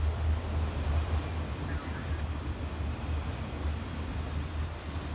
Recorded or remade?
recorded